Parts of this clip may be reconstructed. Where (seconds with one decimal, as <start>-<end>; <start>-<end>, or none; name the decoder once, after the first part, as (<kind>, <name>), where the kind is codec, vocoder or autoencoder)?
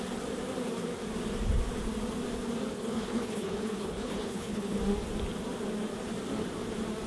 2.7-4.8 (codec, HILCodec)